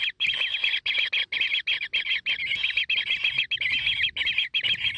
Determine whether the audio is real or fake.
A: real